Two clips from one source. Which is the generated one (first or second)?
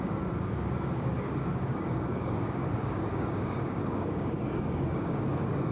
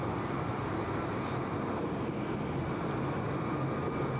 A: first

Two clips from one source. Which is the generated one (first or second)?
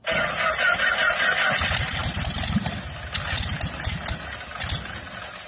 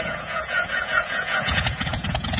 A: second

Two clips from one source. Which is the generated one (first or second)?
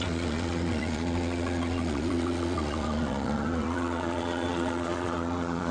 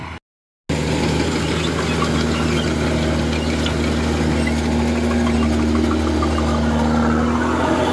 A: first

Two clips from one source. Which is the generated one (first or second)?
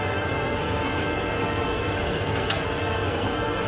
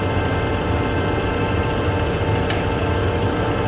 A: first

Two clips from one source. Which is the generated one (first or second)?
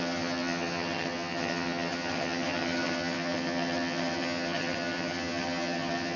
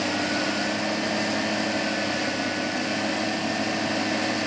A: first